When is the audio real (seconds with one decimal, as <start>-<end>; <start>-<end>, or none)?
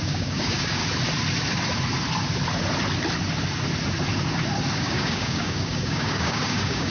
0.8-4.8